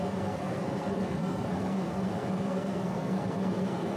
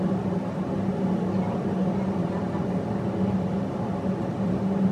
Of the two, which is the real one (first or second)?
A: second